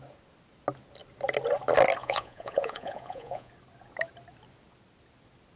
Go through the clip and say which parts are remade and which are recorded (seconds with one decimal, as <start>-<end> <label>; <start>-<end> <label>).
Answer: 0.0-2.0 recorded; 2.0-3.5 remade; 3.5-5.6 recorded